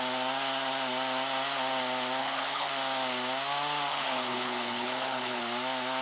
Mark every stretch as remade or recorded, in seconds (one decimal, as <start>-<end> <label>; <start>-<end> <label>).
0.0-2.2 recorded; 2.2-2.7 remade; 2.7-3.9 recorded; 3.9-5.4 remade; 5.4-6.0 recorded